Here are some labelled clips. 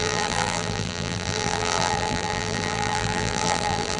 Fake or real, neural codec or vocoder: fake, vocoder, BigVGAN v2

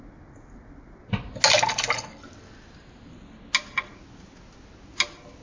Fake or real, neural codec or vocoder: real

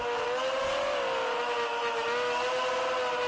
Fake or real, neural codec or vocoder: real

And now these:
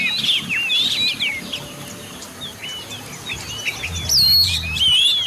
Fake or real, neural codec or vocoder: real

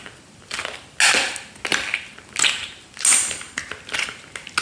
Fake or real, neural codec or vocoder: real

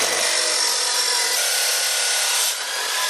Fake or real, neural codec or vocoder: fake, vocoder, BigVGAN v2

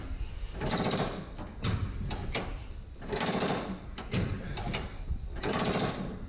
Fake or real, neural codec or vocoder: real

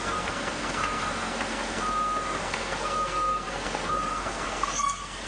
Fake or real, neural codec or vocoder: fake, codec, SNAC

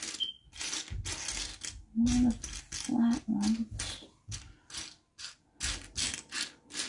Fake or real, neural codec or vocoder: real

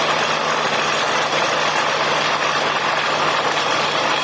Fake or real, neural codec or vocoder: real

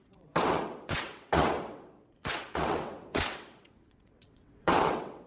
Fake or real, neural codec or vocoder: fake, vocoder, WaveNeXt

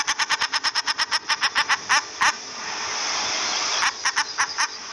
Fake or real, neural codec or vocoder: real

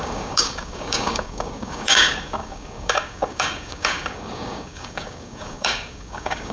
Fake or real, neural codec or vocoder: fake, codec, DAC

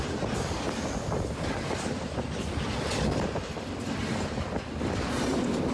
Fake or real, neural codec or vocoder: real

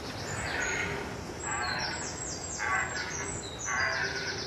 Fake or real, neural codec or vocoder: real